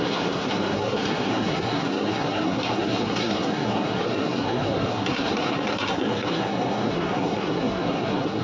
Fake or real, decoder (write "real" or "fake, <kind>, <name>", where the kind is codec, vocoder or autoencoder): fake, codec, SNAC